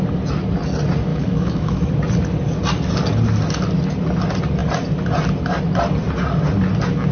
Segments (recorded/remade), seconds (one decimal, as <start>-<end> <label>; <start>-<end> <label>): 0.0-1.1 recorded; 1.1-1.9 remade; 1.9-7.1 recorded